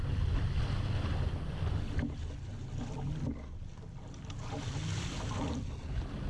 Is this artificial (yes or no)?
no